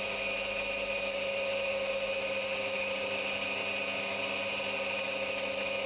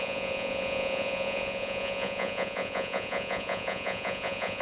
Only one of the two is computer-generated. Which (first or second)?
second